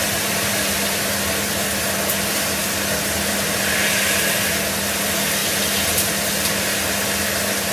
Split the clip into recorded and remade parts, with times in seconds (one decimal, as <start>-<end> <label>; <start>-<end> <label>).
0.0-7.7 recorded